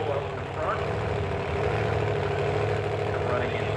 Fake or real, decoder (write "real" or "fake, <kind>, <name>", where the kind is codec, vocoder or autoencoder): real